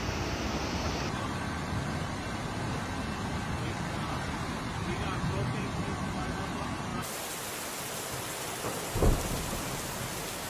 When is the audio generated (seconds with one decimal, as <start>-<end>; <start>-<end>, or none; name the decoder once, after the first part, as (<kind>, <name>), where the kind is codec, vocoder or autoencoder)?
0.0-2.4 (vocoder, BigVGAN v2); 4.2-6.9; 8.4-10.5